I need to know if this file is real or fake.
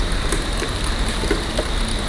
real